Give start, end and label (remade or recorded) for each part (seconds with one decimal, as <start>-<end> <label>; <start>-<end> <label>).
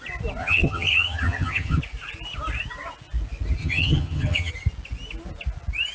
0.0-0.4 recorded; 0.4-1.8 remade; 1.8-3.6 recorded; 3.6-4.5 remade; 4.5-5.9 recorded